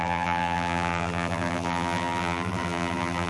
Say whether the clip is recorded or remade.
remade